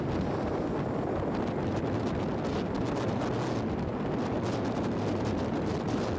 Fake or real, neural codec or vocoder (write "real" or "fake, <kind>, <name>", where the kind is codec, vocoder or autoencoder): real